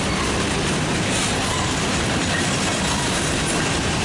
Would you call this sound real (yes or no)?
yes